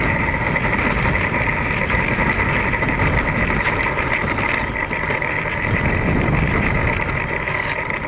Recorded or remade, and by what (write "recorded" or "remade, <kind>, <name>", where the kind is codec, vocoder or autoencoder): recorded